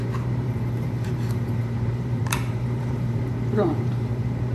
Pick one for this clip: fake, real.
fake